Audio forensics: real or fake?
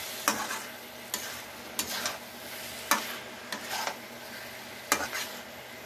real